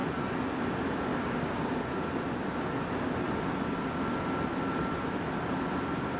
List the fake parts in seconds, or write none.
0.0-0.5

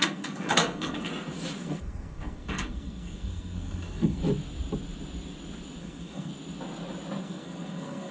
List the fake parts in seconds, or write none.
0.0-1.1; 1.6-4.2; 5.8-6.3; 7.2-8.1

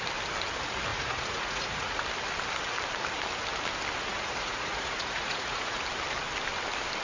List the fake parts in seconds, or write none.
0.9-2.0; 4.1-5.8

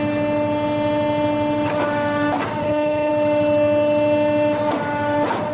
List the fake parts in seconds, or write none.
2.6-3.1

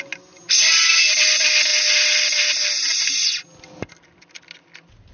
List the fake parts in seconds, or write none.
none

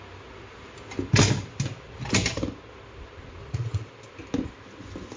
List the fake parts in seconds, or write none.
3.4-3.9